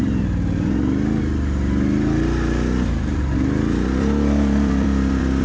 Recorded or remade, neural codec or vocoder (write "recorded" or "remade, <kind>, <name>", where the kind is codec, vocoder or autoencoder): remade, vocoder, BigVGAN v2